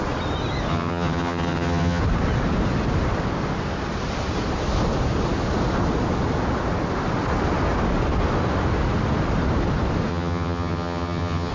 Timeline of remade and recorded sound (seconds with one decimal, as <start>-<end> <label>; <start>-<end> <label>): 0.0-0.7 recorded; 0.7-2.0 remade; 2.0-10.1 recorded; 10.1-11.5 remade